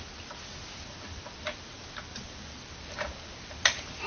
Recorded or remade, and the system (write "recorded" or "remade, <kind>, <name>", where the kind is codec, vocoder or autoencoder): recorded